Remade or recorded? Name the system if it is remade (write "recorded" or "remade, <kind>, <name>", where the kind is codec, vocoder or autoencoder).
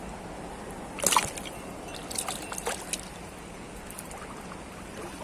recorded